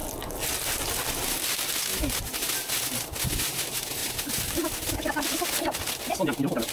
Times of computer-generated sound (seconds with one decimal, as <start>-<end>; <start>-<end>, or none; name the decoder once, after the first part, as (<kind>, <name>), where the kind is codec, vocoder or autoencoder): none